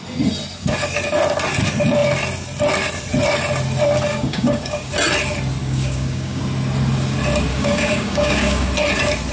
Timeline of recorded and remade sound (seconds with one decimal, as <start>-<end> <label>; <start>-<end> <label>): 0.0-4.1 recorded; 4.1-4.9 remade; 4.9-5.6 recorded; 5.6-6.4 remade; 6.4-7.5 recorded; 7.5-8.7 remade; 8.7-9.3 recorded